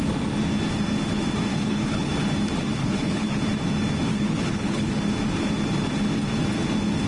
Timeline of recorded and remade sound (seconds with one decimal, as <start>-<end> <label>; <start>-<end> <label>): 0.0-1.5 recorded; 1.5-2.1 remade; 2.1-2.8 recorded; 2.8-3.4 remade; 3.4-4.1 recorded; 4.1-5.0 remade; 5.0-7.1 recorded

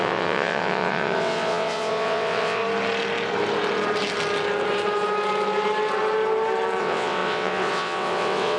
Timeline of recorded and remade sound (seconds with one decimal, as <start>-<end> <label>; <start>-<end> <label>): 0.0-2.6 remade; 2.6-6.8 recorded; 6.8-8.6 remade

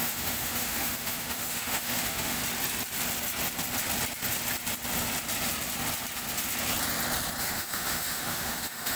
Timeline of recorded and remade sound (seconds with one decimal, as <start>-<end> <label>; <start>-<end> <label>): 0.0-2.4 remade; 2.4-7.4 recorded; 7.4-9.0 remade

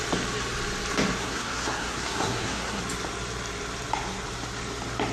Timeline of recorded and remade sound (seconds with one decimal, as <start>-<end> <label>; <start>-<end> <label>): 0.0-1.2 recorded; 1.2-2.8 remade; 2.8-5.1 recorded

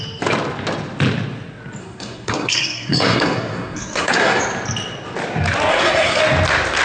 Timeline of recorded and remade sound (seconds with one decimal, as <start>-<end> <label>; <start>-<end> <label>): 0.0-1.8 recorded; 1.8-4.4 remade; 4.4-5.7 recorded; 5.7-6.2 remade; 6.2-6.8 recorded